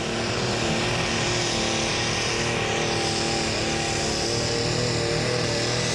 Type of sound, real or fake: real